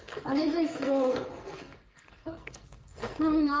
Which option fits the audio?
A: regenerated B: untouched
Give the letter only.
A